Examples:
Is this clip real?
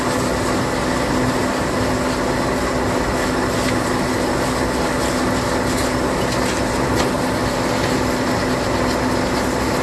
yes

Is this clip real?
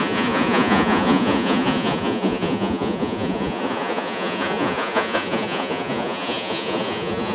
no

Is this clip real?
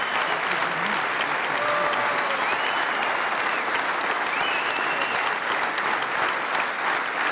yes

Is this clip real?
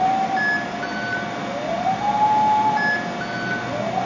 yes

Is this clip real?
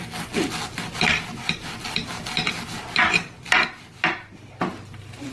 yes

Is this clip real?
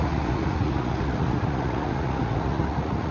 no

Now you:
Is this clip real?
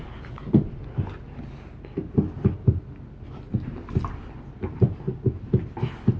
yes